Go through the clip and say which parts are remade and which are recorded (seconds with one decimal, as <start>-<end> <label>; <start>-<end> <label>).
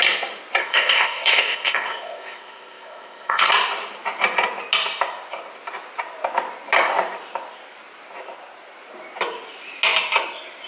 0.0-0.6 recorded; 0.6-3.5 remade; 3.5-10.7 recorded